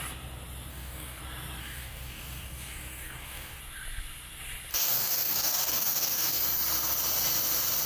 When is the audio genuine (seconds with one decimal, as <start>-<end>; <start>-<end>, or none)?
0.0-0.7; 1.2-1.6; 3.6-4.7; 6.4-7.9